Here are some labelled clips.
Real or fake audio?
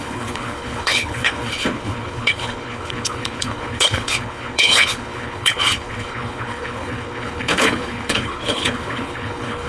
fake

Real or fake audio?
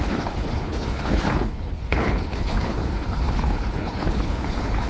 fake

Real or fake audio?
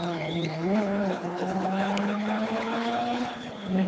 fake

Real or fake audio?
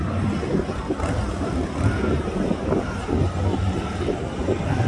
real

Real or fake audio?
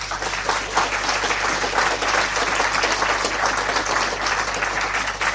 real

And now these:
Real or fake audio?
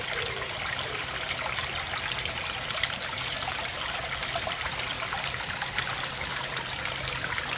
real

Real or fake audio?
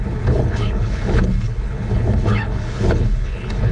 fake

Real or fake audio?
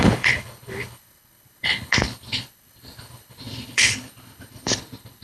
fake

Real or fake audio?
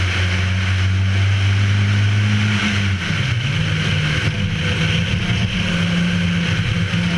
real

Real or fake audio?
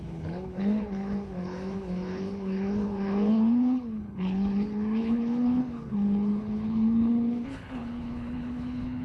fake